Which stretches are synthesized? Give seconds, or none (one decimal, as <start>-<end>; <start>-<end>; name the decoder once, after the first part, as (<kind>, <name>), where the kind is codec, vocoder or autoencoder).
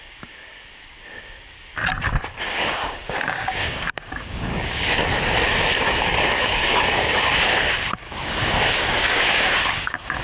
0.0-1.8 (codec, DAC); 2.4-5.0; 5.9-10.2